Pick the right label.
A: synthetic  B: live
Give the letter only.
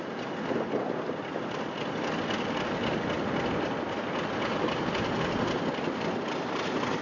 B